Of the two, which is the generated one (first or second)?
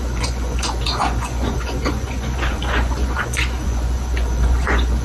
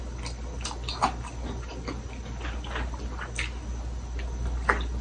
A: first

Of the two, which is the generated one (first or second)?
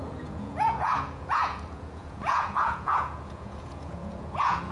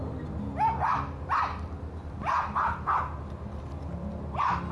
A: first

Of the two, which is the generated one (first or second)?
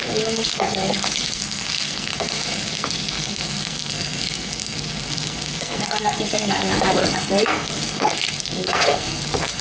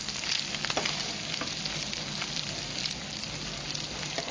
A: first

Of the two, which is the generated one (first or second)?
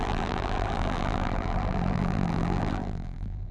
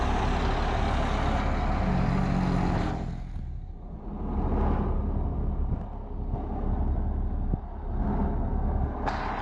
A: first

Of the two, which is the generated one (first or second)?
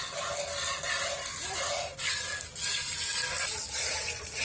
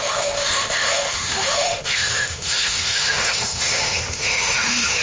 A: second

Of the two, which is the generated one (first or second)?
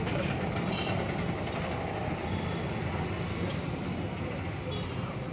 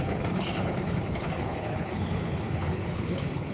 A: second